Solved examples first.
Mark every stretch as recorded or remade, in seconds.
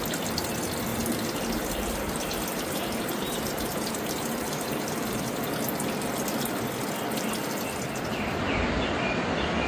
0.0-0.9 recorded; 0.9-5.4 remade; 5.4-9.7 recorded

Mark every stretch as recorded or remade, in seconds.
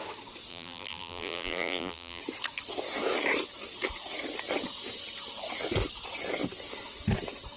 0.0-0.5 recorded; 0.5-2.2 remade; 2.2-7.6 recorded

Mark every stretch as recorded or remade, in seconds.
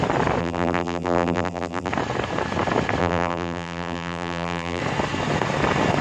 0.0-0.4 recorded; 0.4-1.9 remade; 1.9-3.0 recorded; 3.0-4.8 remade; 4.8-6.0 recorded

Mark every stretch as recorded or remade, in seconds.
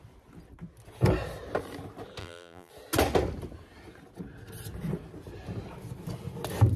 0.0-2.2 recorded; 2.2-2.7 remade; 2.7-6.8 recorded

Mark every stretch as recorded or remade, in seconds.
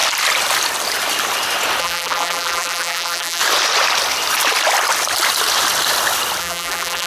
0.0-1.8 recorded; 1.8-3.4 remade; 3.4-6.4 recorded; 6.4-7.1 remade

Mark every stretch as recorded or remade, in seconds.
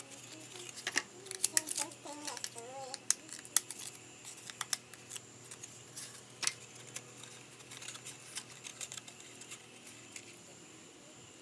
0.0-8.7 recorded; 8.7-9.2 remade; 9.2-11.4 recorded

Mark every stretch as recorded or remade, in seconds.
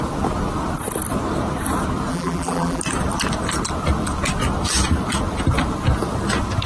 0.0-2.1 recorded; 2.1-2.8 remade; 2.8-6.7 recorded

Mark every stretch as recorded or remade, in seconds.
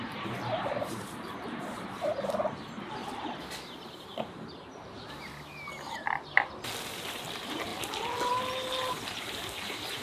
0.0-3.0 remade; 3.0-3.6 recorded; 3.6-5.3 remade; 5.3-6.8 recorded; 6.8-7.7 remade; 7.7-9.2 recorded; 9.2-10.0 remade